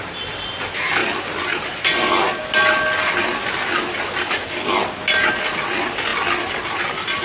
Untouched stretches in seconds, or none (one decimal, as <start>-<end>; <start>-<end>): 0.0-7.2